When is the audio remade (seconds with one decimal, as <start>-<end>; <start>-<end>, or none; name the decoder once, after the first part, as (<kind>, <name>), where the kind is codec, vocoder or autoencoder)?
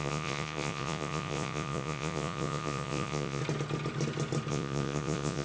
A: 0.0-3.4 (vocoder, Vocos); 4.5-5.4